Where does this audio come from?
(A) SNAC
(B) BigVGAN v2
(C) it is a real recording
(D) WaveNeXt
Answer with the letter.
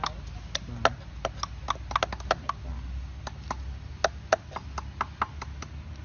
C